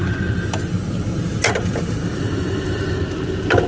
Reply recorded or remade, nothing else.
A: recorded